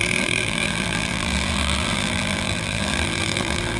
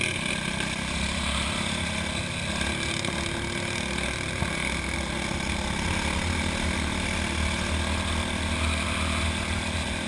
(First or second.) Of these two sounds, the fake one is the first